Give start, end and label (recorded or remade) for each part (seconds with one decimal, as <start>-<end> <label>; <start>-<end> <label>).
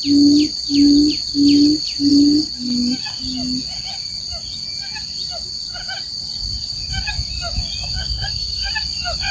0.0-8.0 recorded; 8.0-8.7 remade; 8.7-9.3 recorded